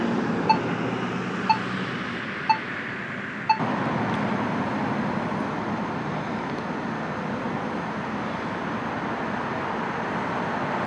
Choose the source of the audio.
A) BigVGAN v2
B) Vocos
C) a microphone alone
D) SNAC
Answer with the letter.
C